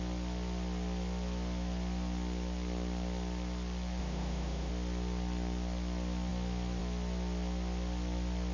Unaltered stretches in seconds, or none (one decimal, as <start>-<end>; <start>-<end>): 0.0-4.0; 4.7-8.5